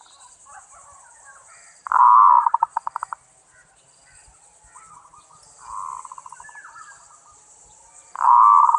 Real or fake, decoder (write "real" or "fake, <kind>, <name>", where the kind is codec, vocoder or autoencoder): real